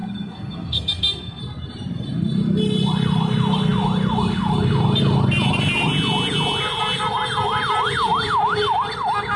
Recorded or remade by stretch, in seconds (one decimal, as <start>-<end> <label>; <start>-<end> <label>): 0.0-1.4 remade; 1.4-9.4 recorded

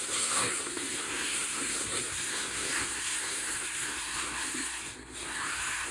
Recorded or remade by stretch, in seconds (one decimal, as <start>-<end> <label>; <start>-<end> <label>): 0.0-5.9 remade

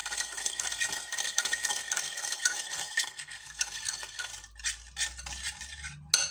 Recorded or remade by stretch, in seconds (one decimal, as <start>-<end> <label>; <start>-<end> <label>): 0.0-4.3 remade; 4.3-6.3 recorded